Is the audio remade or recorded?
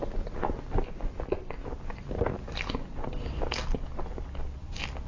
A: recorded